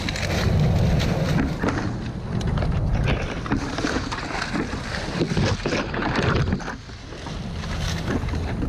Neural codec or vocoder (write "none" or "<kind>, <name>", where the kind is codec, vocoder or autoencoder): none